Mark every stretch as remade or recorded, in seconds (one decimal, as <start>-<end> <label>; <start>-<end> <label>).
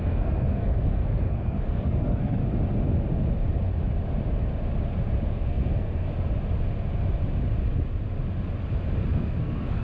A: 0.0-2.4 remade; 2.4-5.3 recorded; 5.3-6.1 remade; 6.1-9.1 recorded; 9.1-9.8 remade